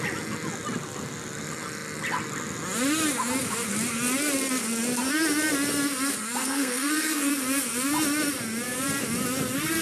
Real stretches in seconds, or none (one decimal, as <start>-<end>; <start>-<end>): 0.0-6.4; 7.3-9.8